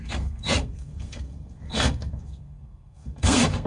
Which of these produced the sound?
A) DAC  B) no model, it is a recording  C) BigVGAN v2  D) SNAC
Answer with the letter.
D